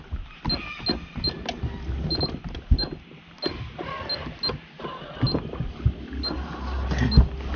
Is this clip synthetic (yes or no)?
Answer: no